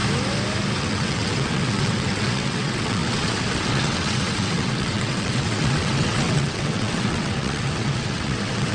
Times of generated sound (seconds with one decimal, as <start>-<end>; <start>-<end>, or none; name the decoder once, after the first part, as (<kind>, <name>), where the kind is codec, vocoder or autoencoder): 0.8-8.7 (vocoder, WaveNeXt)